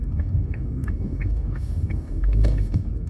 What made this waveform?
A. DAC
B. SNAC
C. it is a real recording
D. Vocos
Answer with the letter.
A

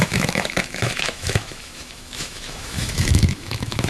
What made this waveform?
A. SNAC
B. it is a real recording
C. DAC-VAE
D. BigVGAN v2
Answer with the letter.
C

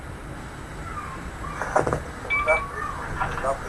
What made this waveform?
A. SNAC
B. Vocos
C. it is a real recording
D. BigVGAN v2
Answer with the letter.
C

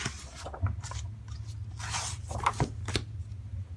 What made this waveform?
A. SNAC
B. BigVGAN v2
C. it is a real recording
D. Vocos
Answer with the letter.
C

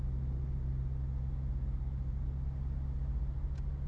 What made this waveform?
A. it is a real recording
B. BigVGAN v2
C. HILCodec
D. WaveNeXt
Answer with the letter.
A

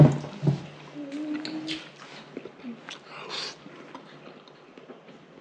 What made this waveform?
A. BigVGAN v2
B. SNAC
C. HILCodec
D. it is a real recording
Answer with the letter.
D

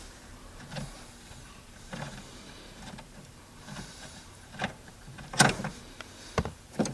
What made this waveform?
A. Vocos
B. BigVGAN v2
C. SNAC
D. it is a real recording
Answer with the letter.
B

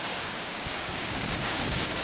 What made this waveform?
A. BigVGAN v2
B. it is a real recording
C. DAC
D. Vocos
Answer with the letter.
C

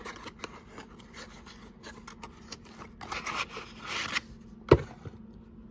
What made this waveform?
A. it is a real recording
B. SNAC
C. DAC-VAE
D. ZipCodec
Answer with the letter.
A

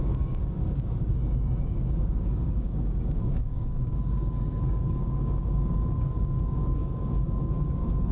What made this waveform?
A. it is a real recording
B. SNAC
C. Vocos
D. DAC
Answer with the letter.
D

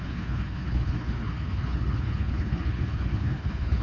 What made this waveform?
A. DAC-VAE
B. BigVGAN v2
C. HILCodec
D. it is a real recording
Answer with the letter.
C